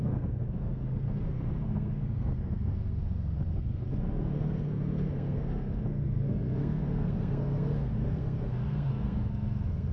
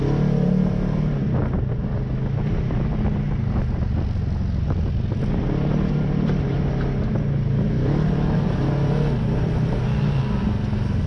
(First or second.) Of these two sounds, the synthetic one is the first